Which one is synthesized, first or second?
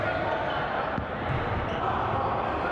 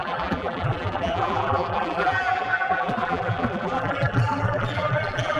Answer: second